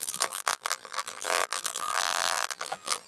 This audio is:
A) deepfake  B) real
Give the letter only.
A